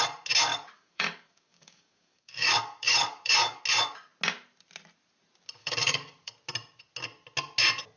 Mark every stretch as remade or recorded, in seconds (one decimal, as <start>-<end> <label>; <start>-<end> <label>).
0.0-0.5 recorded; 0.5-3.6 remade; 3.6-5.6 recorded; 5.6-6.3 remade; 6.3-8.0 recorded